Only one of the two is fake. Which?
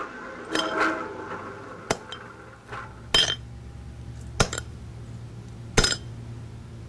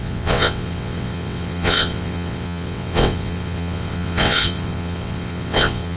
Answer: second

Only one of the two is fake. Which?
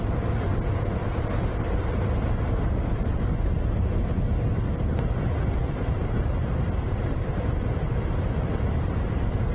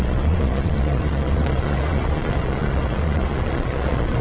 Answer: second